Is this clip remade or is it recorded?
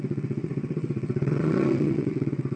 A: remade